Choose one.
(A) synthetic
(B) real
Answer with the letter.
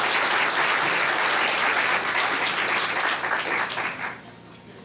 B